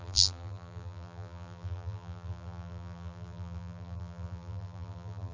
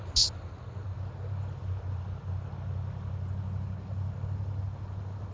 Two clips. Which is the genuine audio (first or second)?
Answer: second